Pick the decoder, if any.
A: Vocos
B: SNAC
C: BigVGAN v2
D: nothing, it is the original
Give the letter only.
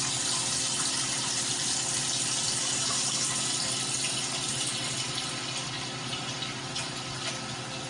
D